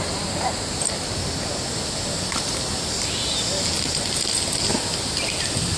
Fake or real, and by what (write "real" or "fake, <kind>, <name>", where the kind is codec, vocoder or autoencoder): real